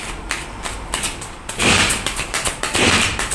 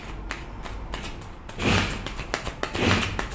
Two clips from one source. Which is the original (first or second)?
second